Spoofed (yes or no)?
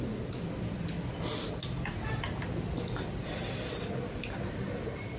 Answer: no